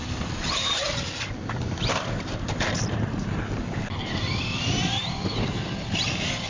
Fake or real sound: fake